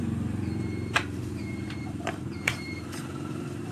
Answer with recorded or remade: remade